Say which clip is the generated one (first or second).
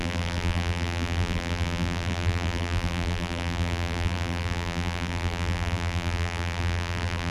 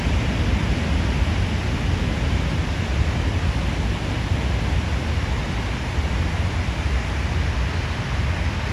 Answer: first